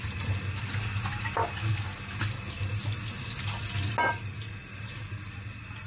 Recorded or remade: recorded